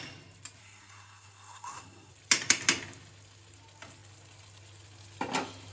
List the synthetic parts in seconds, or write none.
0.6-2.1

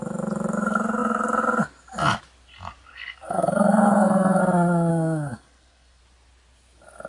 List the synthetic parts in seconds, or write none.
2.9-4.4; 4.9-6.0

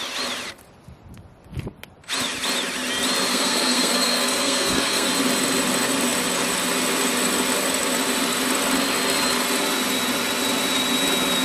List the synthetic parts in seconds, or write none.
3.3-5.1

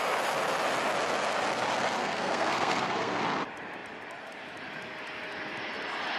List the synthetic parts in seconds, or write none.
2.0-3.2

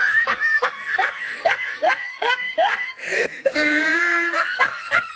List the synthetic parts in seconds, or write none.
0.0-5.2

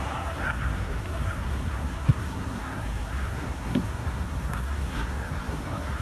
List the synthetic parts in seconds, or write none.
0.0-6.0

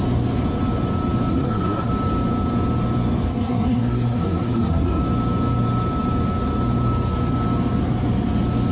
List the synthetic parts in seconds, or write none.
1.3-1.9; 3.3-5.0

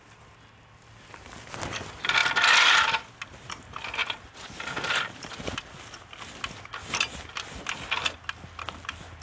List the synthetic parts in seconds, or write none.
none